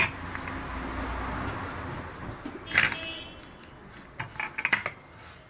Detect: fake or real real